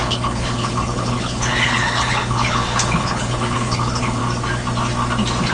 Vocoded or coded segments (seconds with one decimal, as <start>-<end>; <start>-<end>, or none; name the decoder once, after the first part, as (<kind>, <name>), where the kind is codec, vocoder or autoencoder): 0.0-4.2 (codec, HILCodec)